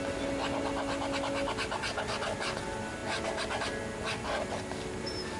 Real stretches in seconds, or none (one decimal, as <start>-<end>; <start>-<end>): 0.0-5.4